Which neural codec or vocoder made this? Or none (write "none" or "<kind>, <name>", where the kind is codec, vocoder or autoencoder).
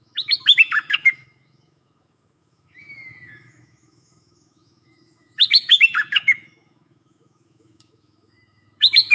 autoencoder, DAC-VAE